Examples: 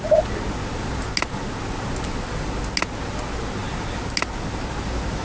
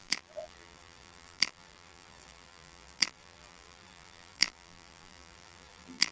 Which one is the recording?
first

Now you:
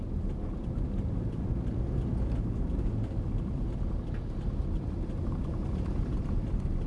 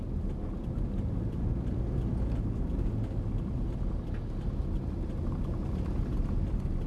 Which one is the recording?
second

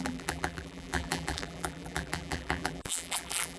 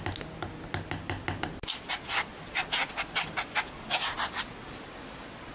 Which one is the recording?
second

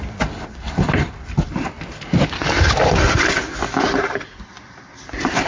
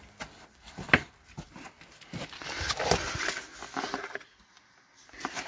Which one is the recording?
second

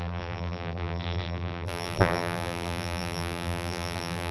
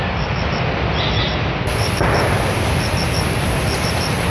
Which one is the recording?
second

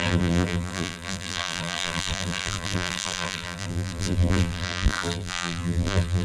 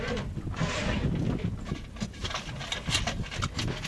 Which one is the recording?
second